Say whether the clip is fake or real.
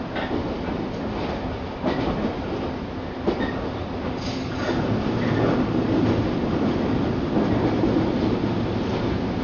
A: real